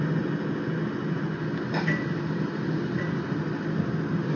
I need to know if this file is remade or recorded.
recorded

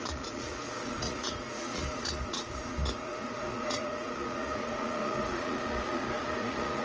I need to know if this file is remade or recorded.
remade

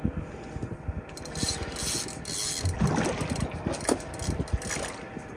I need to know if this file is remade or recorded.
recorded